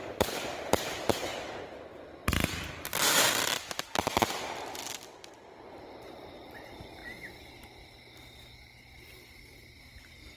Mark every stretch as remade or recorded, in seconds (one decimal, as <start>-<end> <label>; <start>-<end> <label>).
0.0-1.9 remade; 1.9-5.3 recorded; 5.3-7.0 remade; 7.0-9.4 recorded; 9.4-10.4 remade